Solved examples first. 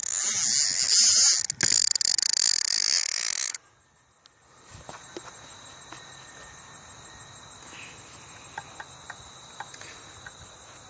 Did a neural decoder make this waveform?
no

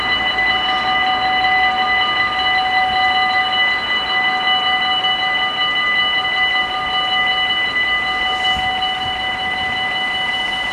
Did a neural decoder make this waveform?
no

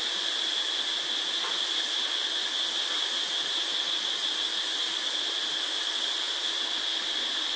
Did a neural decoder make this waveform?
no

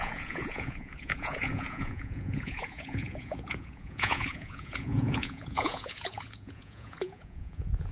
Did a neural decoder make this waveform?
yes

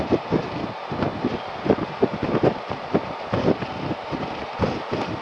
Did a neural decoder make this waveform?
no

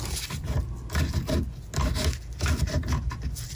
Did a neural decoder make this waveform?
no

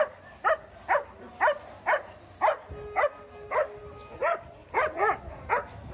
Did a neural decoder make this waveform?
no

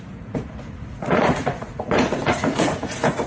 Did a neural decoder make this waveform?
yes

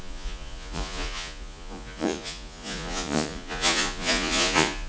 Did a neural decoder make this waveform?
yes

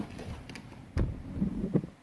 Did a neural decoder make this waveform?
no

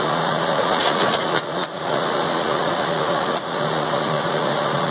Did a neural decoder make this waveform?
yes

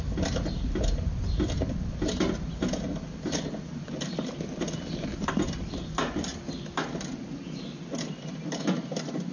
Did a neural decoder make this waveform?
no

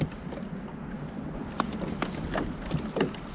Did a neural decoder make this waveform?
no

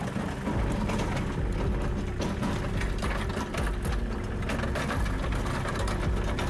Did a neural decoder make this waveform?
no